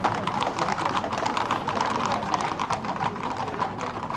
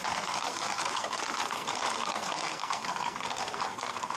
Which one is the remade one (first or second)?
second